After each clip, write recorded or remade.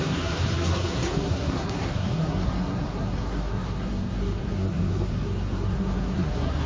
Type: remade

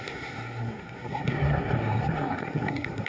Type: remade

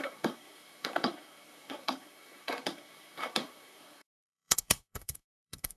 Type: remade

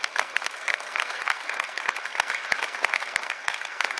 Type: remade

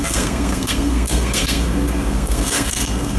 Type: remade